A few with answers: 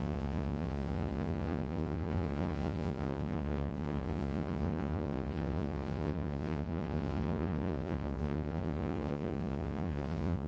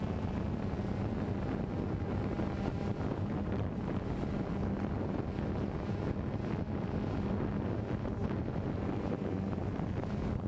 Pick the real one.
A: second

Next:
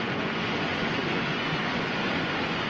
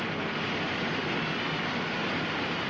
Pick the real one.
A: second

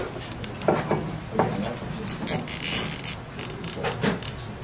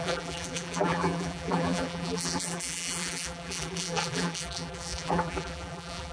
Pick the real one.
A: first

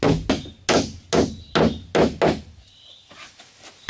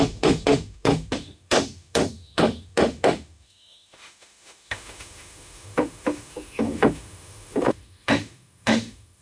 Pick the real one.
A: first